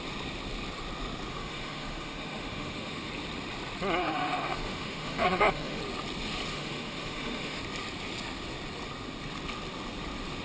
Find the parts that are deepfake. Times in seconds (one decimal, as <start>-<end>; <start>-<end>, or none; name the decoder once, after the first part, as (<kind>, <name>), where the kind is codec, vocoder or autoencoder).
1.3-3.1 (autoencoder, DAC-VAE); 4.0-5.8; 6.5-7.6